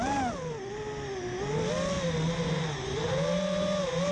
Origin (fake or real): real